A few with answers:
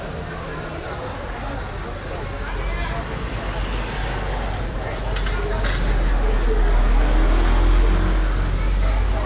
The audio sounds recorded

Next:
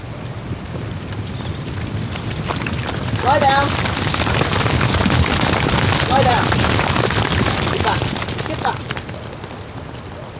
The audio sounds recorded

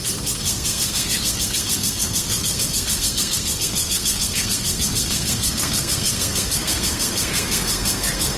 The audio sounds remade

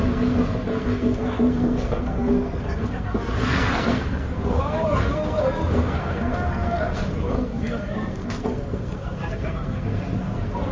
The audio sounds remade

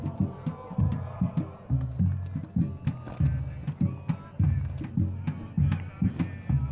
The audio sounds recorded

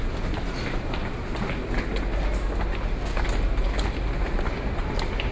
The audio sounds recorded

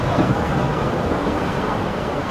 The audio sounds remade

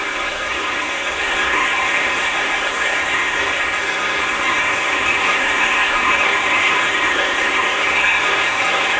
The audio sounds remade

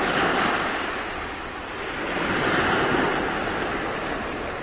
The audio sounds recorded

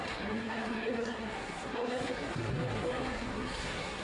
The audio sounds remade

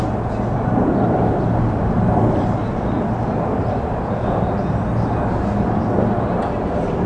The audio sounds recorded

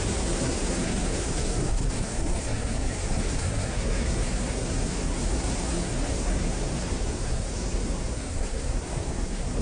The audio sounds remade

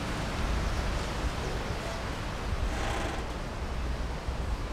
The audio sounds recorded